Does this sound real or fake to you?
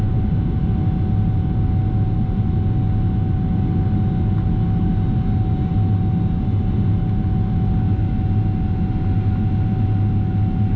real